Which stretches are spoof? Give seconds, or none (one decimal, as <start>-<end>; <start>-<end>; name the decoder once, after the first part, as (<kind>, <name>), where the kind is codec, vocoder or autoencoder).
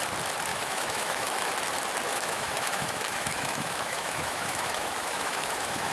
0.5-1.5 (autoencoder, DAC-VAE); 2.1-5.9